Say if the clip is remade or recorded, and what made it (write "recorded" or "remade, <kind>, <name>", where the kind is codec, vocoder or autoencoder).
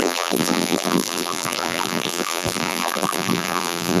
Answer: remade, vocoder, BigVGAN v2